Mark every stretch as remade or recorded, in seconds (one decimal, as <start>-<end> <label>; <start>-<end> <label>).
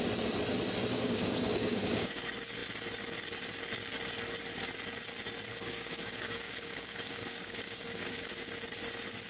0.0-0.9 recorded; 0.9-2.2 remade; 2.2-5.5 recorded; 5.5-8.3 remade; 8.3-9.3 recorded